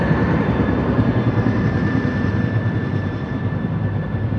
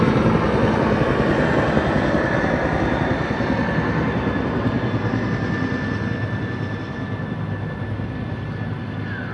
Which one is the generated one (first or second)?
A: first